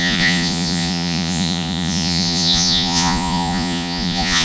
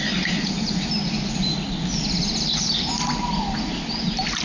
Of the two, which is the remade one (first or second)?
first